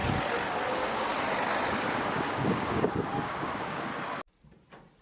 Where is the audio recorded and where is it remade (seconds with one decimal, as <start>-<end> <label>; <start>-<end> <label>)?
0.0-0.7 recorded; 0.7-1.1 remade; 1.1-1.8 recorded; 1.8-3.9 remade; 3.9-5.0 recorded